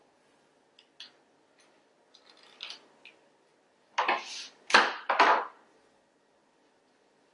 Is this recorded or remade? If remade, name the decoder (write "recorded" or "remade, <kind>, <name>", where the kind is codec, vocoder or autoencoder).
recorded